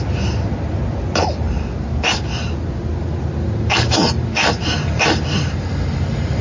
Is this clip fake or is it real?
real